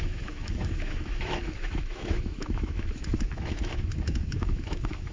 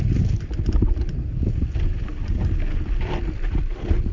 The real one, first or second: second